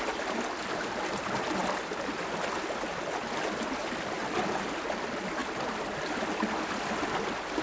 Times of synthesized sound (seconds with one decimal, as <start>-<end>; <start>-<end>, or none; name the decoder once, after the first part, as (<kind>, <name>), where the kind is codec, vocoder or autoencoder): none